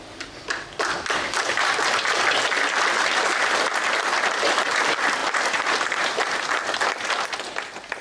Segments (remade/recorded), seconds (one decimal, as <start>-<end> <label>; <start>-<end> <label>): 0.0-8.0 recorded